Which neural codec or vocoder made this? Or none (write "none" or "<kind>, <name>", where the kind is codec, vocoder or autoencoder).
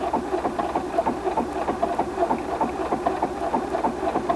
none